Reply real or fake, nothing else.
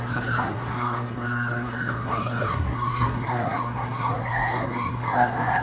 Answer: fake